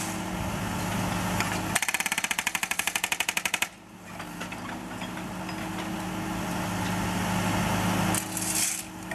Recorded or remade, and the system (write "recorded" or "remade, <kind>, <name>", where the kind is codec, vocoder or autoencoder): recorded